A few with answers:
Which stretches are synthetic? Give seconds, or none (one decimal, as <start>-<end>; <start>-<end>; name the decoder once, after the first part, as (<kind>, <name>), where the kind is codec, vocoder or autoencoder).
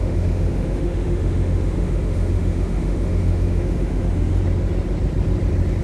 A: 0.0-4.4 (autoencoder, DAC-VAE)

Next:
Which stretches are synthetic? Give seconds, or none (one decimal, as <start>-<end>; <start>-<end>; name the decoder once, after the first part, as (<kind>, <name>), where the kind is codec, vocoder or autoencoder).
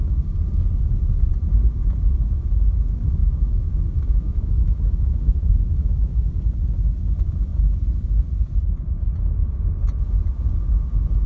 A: 3.2-6.3 (autoencoder, DAC-VAE)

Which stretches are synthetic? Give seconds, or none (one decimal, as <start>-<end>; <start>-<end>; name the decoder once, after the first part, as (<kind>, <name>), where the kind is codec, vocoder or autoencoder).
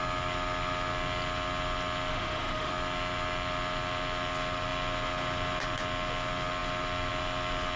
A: 2.1-2.7 (autoencoder, DAC-VAE)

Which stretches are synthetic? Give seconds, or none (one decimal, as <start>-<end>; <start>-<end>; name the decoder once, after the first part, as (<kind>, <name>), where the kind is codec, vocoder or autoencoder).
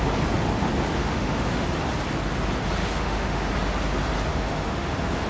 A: 1.0-1.7 (autoencoder, DAC-VAE); 2.8-3.5; 4.3-5.3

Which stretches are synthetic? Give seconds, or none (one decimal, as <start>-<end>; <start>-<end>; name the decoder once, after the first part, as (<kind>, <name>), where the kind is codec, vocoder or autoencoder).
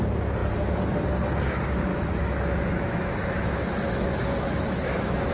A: 1.9-5.3 (autoencoder, DAC-VAE)